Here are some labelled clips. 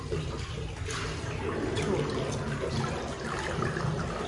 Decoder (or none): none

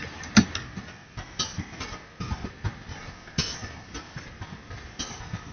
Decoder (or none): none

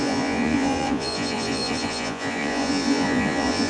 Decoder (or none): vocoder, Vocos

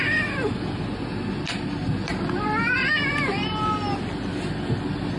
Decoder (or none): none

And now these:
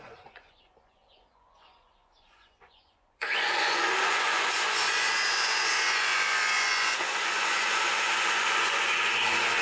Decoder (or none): vocoder, Vocos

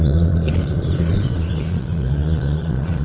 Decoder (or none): vocoder, Vocos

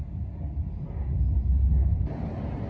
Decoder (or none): none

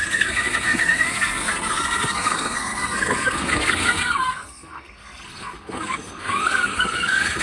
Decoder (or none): codec, SNAC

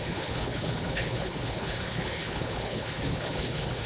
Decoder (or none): codec, HILCodec